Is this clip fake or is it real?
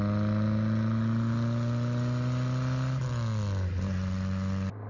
real